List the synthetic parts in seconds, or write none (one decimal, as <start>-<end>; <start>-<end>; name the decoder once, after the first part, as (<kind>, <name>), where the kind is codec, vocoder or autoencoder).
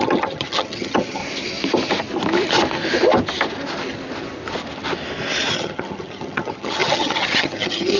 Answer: 0.0-1.2 (vocoder, HiFi-GAN); 5.5-8.0